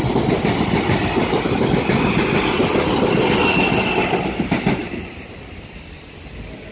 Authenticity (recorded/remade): recorded